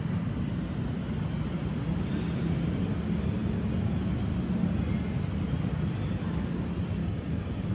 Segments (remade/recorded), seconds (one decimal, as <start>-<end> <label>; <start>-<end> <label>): 0.0-7.0 recorded; 7.0-7.7 remade